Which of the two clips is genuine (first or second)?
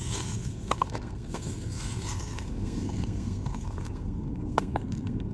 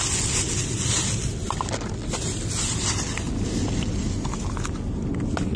second